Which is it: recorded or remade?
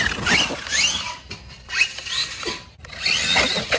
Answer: recorded